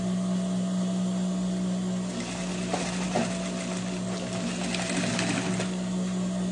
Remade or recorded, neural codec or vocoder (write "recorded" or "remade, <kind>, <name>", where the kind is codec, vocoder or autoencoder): recorded